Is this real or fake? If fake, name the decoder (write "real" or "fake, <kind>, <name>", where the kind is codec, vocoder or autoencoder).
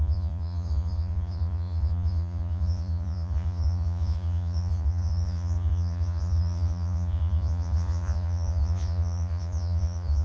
fake, vocoder, Vocos